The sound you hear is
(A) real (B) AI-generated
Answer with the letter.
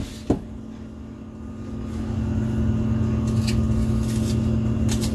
A